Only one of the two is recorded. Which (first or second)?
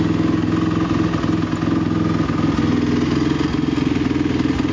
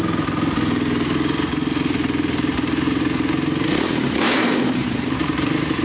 first